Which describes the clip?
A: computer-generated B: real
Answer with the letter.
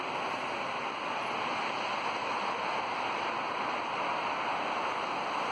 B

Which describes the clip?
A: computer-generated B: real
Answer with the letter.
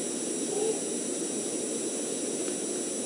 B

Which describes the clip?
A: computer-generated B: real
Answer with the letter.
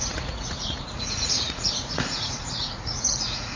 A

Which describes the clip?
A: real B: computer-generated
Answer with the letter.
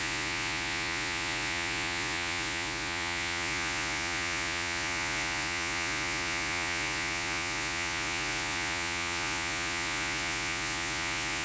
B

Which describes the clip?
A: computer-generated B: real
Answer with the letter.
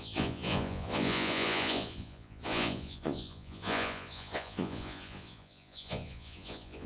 A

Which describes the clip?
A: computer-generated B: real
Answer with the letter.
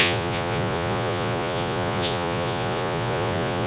A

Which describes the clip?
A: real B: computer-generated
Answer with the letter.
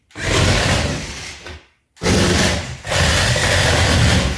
A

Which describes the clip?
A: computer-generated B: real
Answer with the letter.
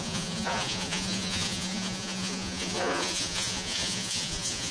A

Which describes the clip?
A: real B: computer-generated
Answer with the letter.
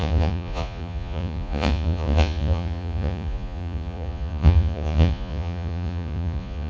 B